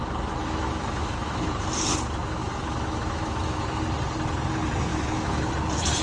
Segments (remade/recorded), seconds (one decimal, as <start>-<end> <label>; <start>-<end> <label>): 0.0-0.4 recorded; 0.4-1.5 remade; 1.5-2.4 recorded; 2.4-3.6 remade; 3.6-4.9 recorded; 4.9-5.5 remade; 5.5-6.0 recorded